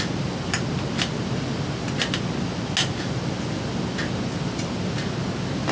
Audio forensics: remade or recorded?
recorded